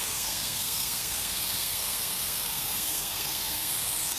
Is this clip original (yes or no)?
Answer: no